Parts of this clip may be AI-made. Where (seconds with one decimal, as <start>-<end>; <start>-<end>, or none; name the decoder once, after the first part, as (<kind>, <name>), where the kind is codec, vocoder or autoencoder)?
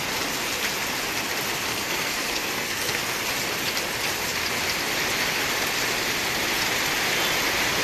1.7-3.2 (codec, SNAC)